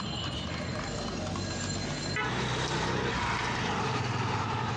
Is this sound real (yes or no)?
yes